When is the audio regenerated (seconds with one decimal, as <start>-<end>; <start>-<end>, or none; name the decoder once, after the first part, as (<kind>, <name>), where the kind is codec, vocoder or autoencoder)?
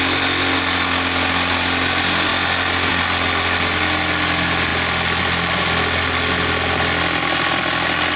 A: none